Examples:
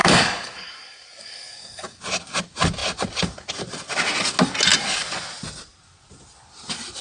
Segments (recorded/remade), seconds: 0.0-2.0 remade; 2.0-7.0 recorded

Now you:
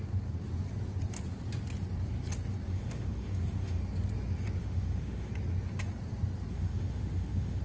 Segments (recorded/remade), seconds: 0.0-2.7 recorded; 2.7-3.8 remade; 3.8-4.6 recorded; 4.6-5.3 remade; 5.3-6.5 recorded; 6.5-7.6 remade